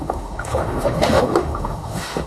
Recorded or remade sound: remade